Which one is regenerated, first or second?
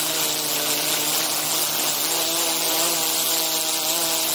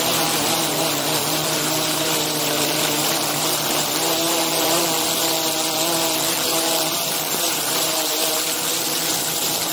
second